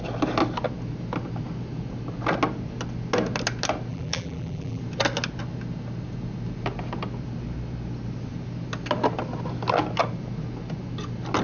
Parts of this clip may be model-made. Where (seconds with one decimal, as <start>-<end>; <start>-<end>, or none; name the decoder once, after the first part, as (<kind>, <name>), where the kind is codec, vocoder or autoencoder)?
3.9-4.8 (vocoder, BigVGAN v2)